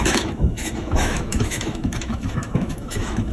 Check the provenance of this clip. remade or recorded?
remade